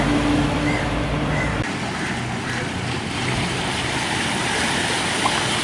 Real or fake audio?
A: real